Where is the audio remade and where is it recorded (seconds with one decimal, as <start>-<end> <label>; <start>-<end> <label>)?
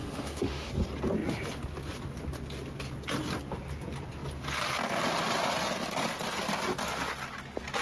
0.0-0.7 remade; 0.7-7.8 recorded